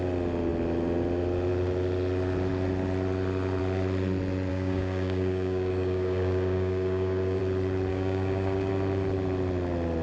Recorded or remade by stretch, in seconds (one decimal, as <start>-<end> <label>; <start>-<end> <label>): 0.0-4.5 recorded; 4.5-7.4 remade; 7.4-7.9 recorded; 7.9-8.7 remade; 8.7-10.0 recorded